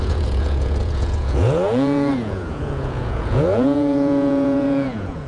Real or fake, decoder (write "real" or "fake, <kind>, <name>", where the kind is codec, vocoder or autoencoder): fake, vocoder, Vocos